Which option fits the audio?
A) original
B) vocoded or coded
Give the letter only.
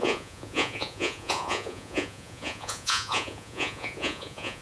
B